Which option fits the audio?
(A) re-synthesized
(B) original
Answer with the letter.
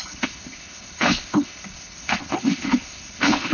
A